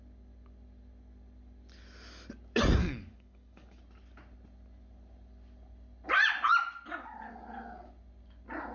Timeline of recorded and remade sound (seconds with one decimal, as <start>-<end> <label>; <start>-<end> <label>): 0.0-2.8 recorded; 2.8-3.8 remade; 3.8-8.7 recorded

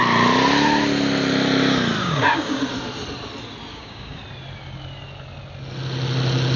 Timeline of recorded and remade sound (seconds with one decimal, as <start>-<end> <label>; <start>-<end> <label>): 0.0-2.0 recorded; 2.0-2.6 remade; 2.6-3.7 recorded; 3.7-4.2 remade; 4.2-6.6 recorded

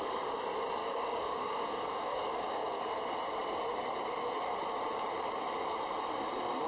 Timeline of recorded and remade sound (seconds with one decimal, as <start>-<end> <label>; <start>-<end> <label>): 0.0-0.8 recorded; 0.8-2.8 remade; 2.8-6.7 recorded

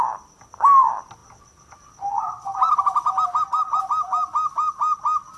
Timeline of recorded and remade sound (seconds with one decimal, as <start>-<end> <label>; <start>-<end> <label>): 0.0-5.4 recorded

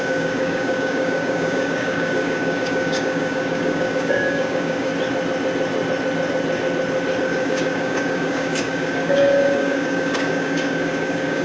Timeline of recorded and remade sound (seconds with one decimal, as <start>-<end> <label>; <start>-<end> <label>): 0.0-4.9 remade; 4.9-7.2 recorded; 7.2-11.4 remade

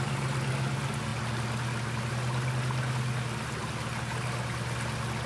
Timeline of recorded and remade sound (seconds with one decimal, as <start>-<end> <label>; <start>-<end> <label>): 0.0-5.3 recorded